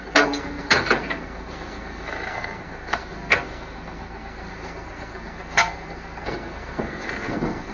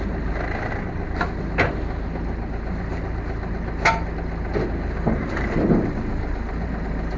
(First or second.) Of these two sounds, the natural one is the second